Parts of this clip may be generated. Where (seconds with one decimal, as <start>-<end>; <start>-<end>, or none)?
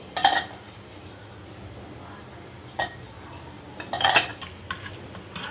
none